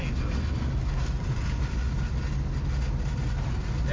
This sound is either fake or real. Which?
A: real